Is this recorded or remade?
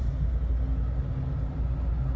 recorded